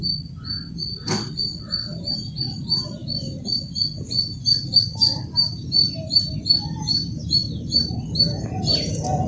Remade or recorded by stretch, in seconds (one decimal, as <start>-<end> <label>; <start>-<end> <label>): 0.0-9.3 recorded